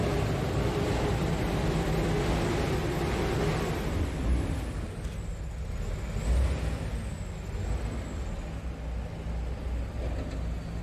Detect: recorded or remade recorded